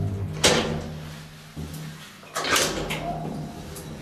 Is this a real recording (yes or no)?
yes